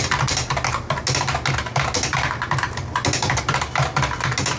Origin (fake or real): real